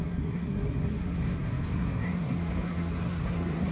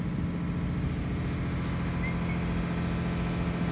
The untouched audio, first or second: second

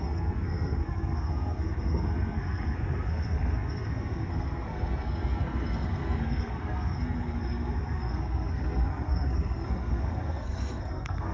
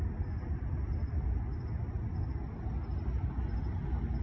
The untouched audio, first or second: second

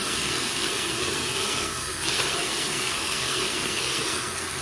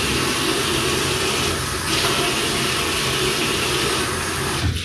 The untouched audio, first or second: second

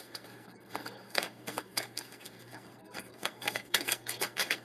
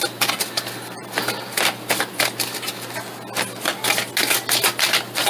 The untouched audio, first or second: second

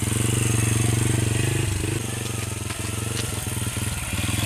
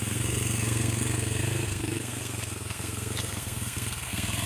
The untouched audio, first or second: first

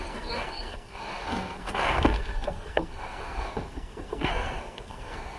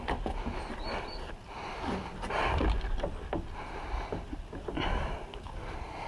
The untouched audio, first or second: second